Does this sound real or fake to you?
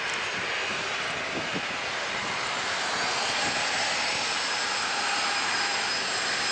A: real